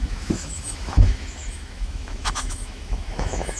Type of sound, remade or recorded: remade